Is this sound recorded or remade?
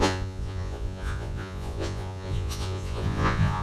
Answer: remade